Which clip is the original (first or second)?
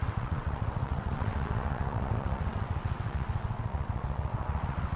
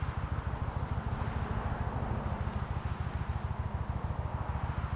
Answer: second